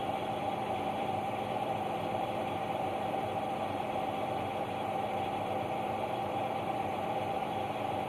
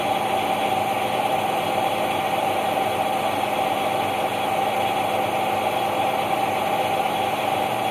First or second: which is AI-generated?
first